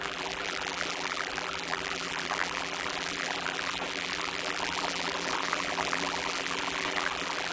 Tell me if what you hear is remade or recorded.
remade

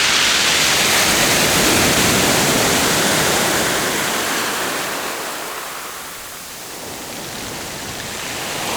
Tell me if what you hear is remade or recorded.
recorded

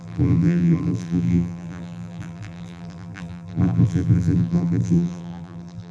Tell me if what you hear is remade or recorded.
remade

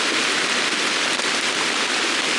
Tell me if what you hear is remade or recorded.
recorded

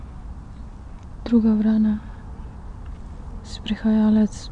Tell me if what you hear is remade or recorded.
recorded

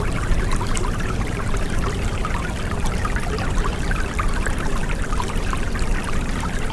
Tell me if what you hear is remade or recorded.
remade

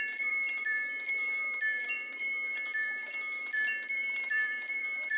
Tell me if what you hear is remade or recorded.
remade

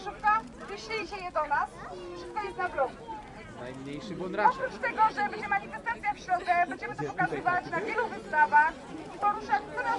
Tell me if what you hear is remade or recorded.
recorded